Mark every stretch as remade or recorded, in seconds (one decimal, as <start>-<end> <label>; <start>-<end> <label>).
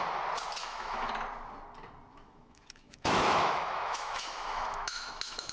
0.0-0.6 recorded; 0.6-1.1 remade; 1.1-2.1 recorded; 2.1-5.5 remade